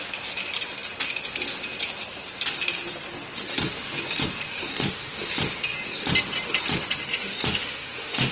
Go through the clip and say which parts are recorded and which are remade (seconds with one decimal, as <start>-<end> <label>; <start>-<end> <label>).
0.0-4.5 recorded; 4.5-5.3 remade; 5.3-7.1 recorded; 7.1-8.3 remade